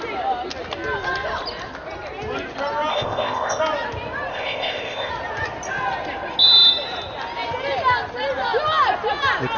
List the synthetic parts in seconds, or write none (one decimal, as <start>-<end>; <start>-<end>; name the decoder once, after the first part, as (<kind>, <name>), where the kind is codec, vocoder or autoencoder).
2.9-3.6 (codec, ZipCodec); 4.3-5.1